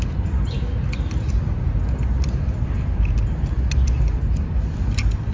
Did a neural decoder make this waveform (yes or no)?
no